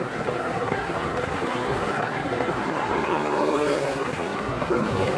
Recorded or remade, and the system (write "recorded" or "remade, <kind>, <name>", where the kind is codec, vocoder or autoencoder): remade, codec, SNAC